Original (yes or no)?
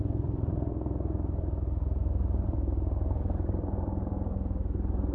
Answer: no